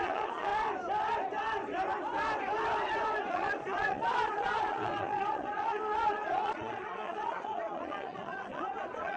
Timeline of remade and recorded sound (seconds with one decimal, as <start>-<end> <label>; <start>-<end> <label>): 0.0-0.5 remade; 0.5-3.3 recorded; 3.3-9.2 remade